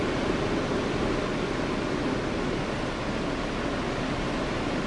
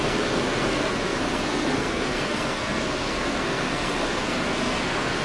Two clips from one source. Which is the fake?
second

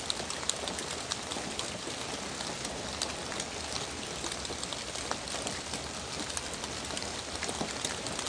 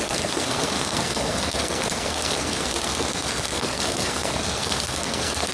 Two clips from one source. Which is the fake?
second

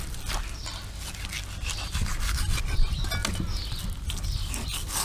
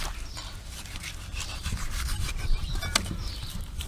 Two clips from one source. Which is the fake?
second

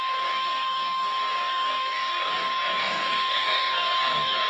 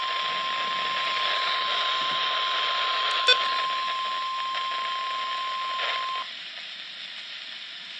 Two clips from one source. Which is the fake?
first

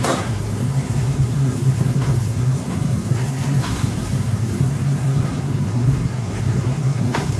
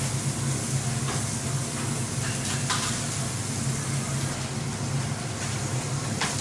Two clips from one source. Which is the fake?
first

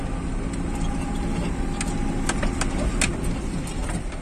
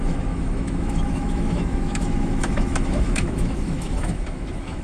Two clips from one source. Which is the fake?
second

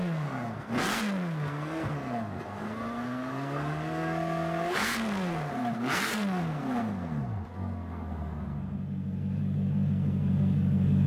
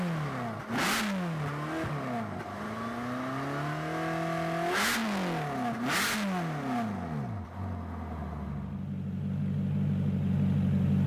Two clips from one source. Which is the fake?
first